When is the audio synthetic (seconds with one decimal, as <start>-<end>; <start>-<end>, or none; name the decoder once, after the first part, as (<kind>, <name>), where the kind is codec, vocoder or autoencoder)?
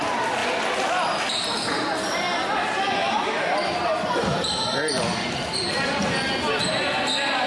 none